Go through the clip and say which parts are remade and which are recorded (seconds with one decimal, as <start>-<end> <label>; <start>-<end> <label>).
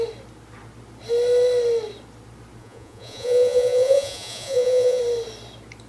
0.0-2.6 recorded; 2.6-5.0 remade; 5.0-5.9 recorded